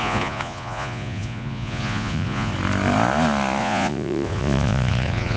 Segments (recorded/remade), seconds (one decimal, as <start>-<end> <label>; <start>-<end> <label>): 0.0-2.5 remade; 2.5-3.6 recorded; 3.6-5.4 remade